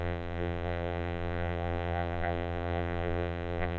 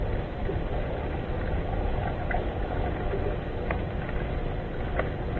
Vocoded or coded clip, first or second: first